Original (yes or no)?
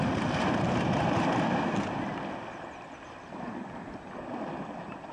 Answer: yes